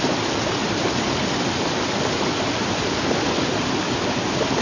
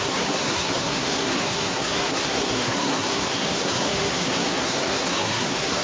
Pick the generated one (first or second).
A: second